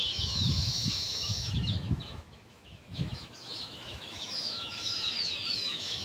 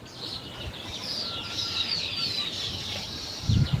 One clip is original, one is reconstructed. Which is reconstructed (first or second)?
first